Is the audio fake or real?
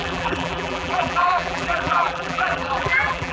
fake